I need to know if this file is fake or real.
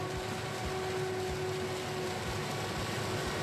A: real